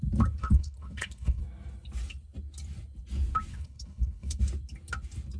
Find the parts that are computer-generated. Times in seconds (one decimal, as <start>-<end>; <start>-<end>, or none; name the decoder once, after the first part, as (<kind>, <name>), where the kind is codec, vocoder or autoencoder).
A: 0.4-1.4 (codec, HILCodec); 3.5-4.4